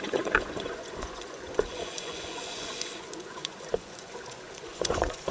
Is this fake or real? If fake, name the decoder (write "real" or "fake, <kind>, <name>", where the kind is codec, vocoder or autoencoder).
fake, vocoder, Vocos